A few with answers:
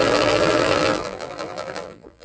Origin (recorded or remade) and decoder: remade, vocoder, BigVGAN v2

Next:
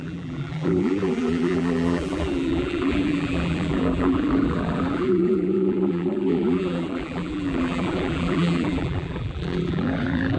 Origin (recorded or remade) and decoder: remade, vocoder, BigVGAN v2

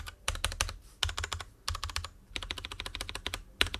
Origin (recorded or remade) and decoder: recorded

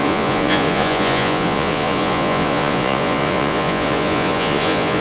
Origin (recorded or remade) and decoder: remade, vocoder, Vocos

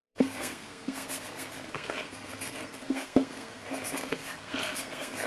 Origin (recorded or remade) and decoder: remade, codec, SNAC